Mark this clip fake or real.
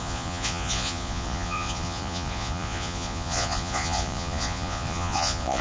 fake